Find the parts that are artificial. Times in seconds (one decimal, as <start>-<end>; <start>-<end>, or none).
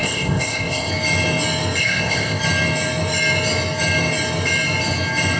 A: 0.0-0.9; 1.8-2.4